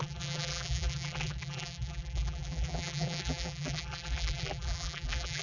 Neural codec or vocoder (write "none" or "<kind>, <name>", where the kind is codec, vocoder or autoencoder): vocoder, BigVGAN v2